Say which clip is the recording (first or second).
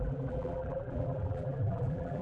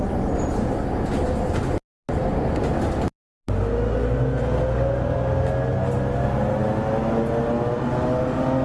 second